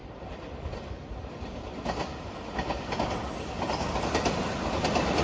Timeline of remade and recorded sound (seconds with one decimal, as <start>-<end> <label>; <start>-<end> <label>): 0.0-5.2 recorded